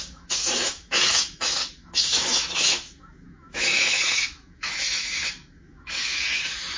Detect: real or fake fake